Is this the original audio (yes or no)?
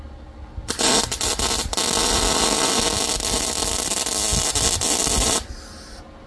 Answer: yes